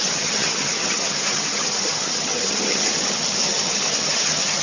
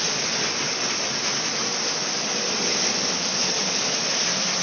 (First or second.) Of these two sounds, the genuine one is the second